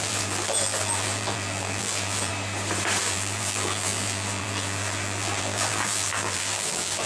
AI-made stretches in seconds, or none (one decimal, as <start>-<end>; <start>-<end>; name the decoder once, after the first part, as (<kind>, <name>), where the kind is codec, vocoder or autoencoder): 0.0-2.3 (vocoder, BigVGAN v2); 3.0-7.1